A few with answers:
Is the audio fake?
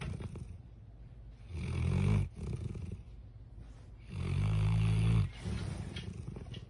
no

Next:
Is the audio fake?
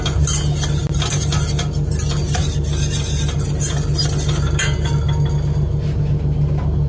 no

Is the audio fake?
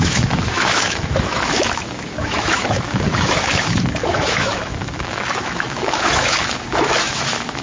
yes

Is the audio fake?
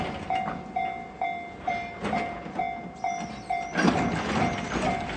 no